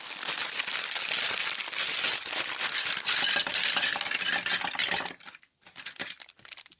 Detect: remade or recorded recorded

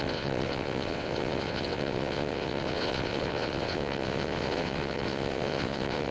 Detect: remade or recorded remade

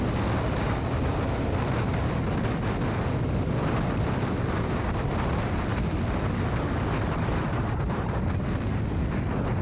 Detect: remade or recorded recorded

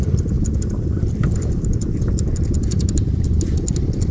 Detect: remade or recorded recorded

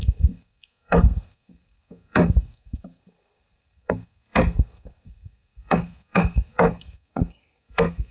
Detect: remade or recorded remade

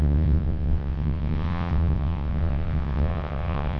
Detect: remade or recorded remade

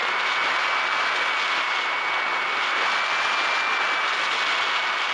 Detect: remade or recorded recorded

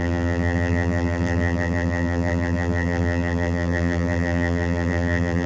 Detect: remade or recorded remade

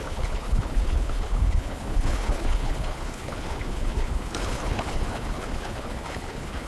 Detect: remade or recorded remade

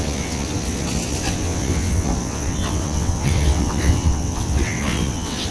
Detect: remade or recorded remade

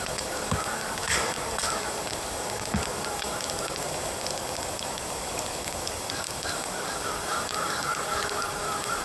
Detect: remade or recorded remade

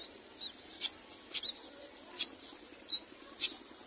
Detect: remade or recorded recorded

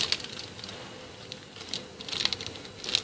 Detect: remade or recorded recorded